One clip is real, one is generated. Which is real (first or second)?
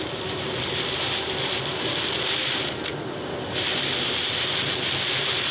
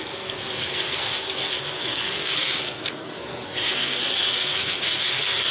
first